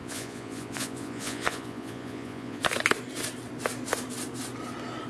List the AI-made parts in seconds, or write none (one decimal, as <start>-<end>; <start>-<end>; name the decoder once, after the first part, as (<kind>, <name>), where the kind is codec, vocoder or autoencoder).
0.0-2.6 (vocoder, Vocos)